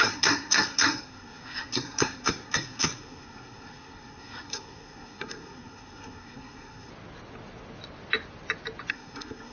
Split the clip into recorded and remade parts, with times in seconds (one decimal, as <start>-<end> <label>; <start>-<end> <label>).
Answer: 0.0-6.9 remade; 6.9-8.9 recorded; 8.9-9.5 remade